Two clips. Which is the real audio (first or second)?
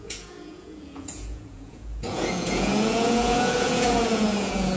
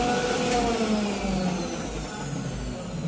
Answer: second